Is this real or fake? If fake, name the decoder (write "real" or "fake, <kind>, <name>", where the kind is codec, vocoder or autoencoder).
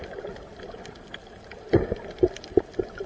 real